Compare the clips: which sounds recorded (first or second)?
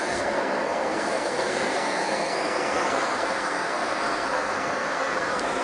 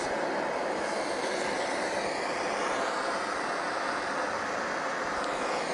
second